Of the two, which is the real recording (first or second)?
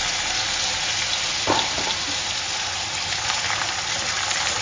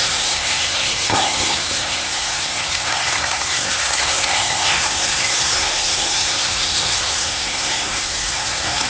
first